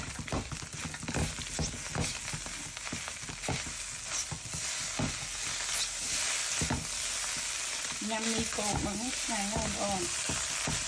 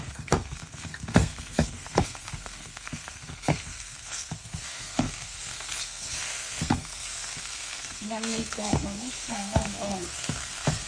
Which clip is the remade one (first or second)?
second